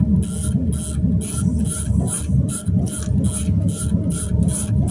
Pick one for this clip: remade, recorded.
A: recorded